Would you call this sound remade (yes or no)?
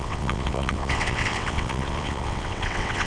yes